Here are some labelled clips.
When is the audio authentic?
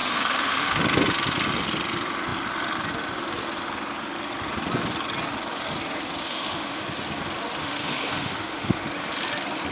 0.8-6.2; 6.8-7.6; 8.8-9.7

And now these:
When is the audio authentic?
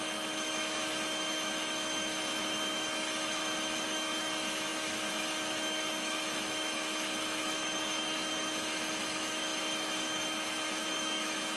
none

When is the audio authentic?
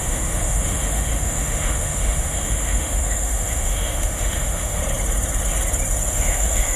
4.8-6.1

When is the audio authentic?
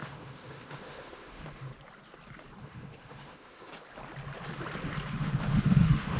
1.7-2.6; 3.7-5.2